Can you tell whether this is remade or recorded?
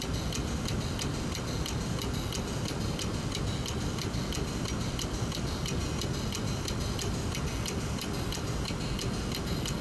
recorded